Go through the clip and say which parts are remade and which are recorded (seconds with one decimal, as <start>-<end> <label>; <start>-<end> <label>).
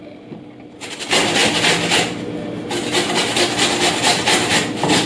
0.0-5.1 recorded